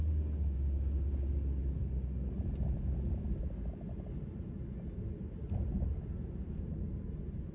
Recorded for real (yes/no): yes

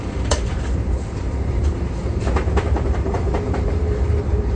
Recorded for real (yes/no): no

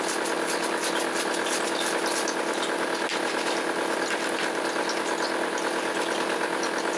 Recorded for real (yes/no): yes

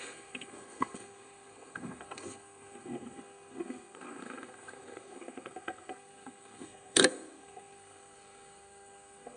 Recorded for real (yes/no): no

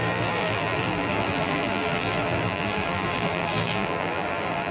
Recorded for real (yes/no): no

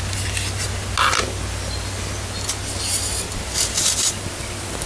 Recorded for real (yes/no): yes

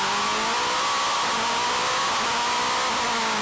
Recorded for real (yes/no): yes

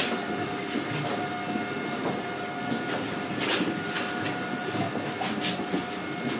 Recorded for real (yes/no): yes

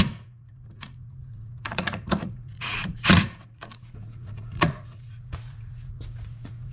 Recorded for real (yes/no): no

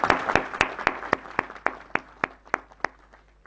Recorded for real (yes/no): yes